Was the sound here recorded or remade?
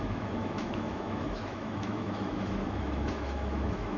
remade